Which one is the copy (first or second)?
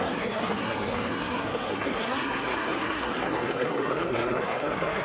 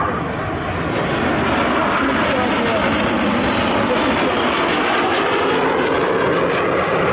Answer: first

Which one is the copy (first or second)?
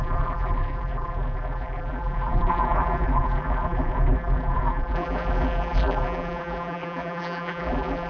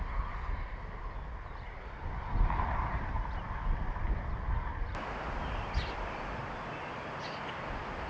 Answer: first